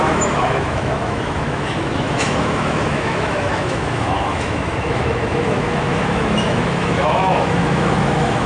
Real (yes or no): no